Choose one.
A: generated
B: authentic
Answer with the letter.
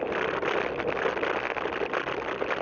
B